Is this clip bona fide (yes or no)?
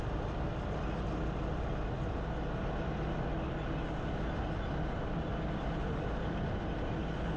yes